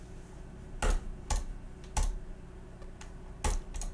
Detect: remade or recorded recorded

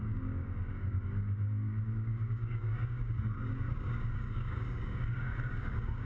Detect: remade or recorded remade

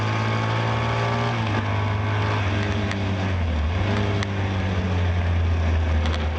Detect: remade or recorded recorded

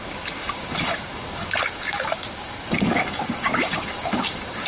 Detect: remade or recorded remade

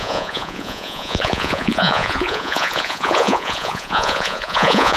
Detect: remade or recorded remade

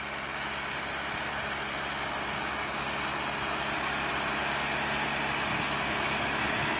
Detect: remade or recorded recorded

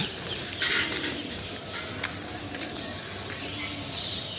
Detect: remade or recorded recorded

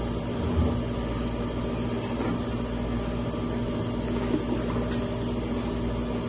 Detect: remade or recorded recorded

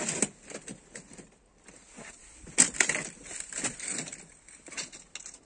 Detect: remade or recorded recorded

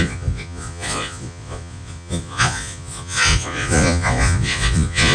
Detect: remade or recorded remade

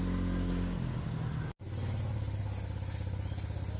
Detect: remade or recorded recorded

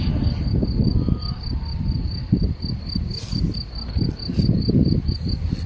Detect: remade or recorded recorded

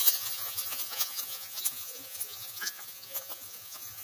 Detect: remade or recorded remade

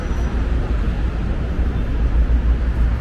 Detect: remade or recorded recorded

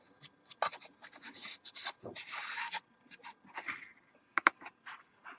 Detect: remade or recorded recorded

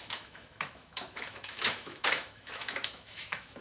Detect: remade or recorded remade